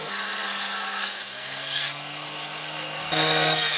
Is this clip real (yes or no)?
no